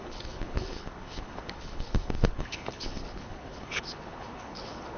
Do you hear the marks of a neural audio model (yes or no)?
yes